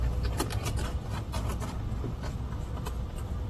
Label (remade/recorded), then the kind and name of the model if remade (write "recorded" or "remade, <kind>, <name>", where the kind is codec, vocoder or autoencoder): recorded